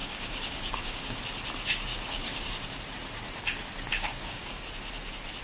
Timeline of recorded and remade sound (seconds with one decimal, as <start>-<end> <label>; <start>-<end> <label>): 0.0-1.2 remade; 1.2-1.9 recorded; 1.9-2.5 remade; 2.5-3.9 recorded; 3.9-4.6 remade; 4.6-5.4 recorded